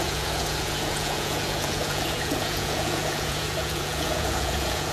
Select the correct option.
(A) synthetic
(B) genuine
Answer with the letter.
A